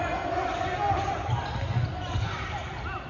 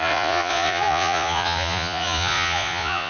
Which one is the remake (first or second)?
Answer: second